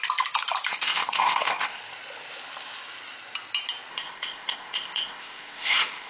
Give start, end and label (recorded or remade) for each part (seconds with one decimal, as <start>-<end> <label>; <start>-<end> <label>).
0.0-0.7 recorded; 0.7-1.8 remade; 1.8-3.9 recorded; 3.9-6.1 remade